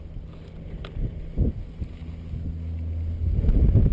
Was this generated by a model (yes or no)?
no